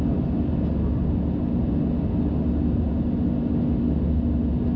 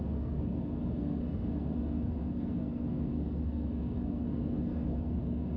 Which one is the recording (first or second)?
first